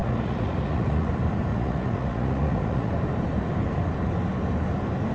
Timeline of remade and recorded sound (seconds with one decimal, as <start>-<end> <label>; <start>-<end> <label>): 0.0-1.1 remade; 1.1-1.5 recorded; 1.5-2.9 remade; 2.9-5.1 recorded